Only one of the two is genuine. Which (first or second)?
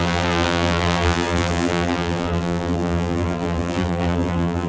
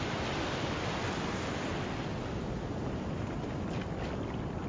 second